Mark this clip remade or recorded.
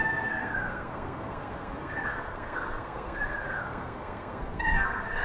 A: remade